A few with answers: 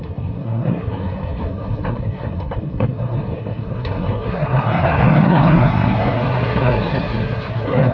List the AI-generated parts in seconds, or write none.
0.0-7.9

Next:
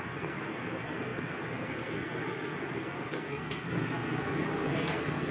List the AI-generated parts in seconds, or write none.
0.0-5.3